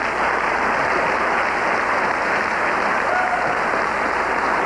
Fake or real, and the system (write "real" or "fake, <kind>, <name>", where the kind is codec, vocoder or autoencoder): real